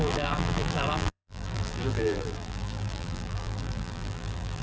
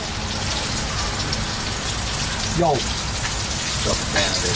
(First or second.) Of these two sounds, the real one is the second